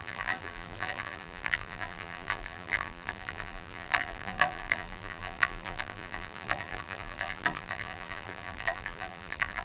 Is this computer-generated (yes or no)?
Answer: yes